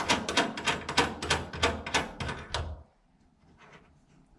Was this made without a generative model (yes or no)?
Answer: yes